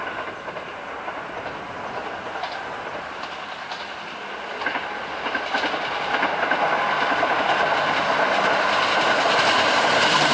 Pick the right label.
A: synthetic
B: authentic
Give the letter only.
B